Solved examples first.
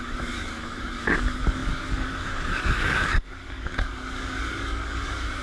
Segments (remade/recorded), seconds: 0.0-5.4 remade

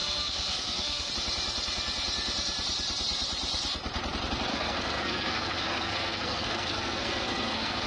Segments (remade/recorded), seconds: 0.0-1.1 remade; 1.1-4.5 recorded; 4.5-7.9 remade